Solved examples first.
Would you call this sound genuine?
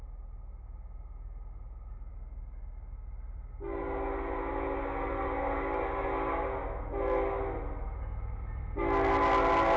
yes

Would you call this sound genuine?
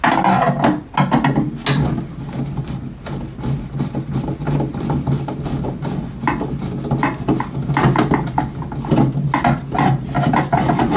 yes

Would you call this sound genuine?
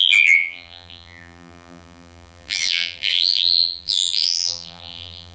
no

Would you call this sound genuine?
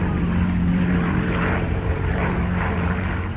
no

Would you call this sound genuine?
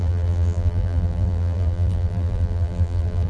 no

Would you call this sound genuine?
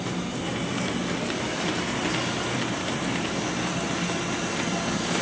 yes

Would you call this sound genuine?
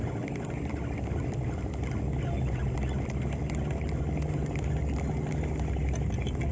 yes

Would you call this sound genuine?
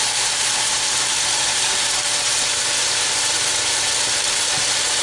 no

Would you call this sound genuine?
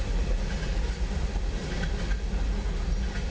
yes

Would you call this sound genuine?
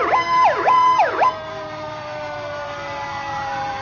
no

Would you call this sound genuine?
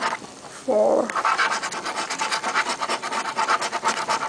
yes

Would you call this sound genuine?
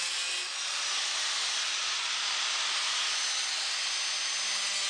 yes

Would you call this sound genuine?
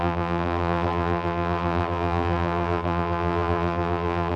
no